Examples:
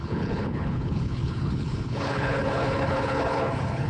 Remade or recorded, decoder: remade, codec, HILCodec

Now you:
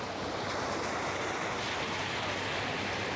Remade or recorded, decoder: recorded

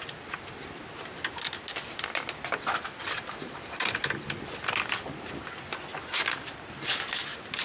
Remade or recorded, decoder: recorded